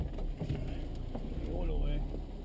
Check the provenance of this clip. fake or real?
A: real